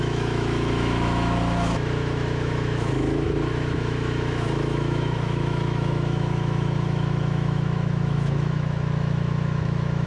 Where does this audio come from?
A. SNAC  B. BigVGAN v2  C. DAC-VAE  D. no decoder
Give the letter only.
C